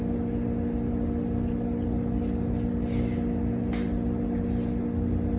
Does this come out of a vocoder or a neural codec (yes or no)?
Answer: no